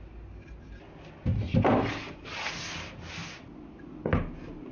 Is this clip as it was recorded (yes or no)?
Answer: yes